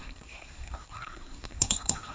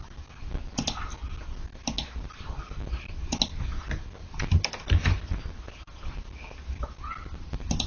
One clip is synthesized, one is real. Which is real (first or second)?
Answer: second